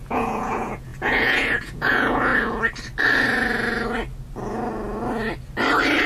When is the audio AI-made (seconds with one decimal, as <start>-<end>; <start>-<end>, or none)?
0.0-2.3